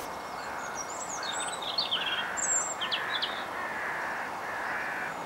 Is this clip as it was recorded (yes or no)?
yes